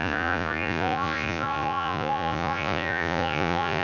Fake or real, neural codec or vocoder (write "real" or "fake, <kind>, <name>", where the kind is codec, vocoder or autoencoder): fake, vocoder, Vocos